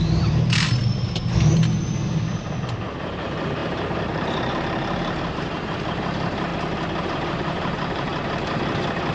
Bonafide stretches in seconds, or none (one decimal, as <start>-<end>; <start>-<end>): 0.8-3.0; 6.5-7.0; 8.1-9.1